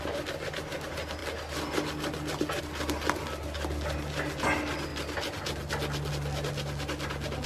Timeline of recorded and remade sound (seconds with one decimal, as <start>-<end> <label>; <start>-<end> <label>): 0.0-7.5 recorded